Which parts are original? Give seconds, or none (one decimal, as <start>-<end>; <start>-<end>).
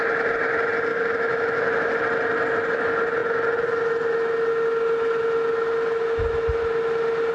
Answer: 0.0-0.9; 2.0-7.3